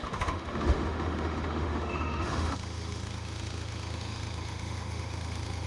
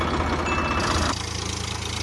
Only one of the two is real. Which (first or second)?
second